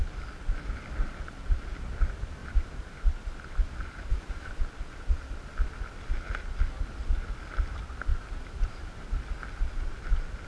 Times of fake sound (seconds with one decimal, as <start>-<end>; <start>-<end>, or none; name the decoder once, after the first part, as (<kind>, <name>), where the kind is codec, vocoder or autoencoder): 2.4-3.0 (vocoder, BigVGAN v2); 4.1-4.6; 8.1-9.2